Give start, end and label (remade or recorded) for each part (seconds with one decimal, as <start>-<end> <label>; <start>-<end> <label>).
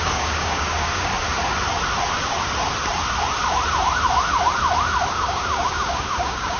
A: 0.0-1.1 remade; 1.1-5.1 recorded; 5.1-6.6 remade